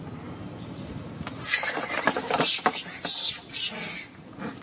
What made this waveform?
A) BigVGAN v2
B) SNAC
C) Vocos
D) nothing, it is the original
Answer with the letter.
D